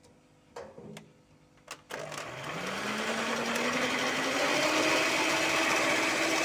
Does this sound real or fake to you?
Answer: real